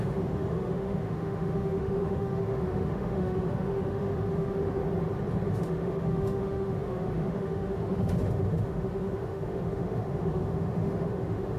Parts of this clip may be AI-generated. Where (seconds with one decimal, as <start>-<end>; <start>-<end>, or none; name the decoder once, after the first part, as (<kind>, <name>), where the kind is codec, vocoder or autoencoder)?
0.0-4.8 (autoencoder, DAC-VAE); 5.5-11.6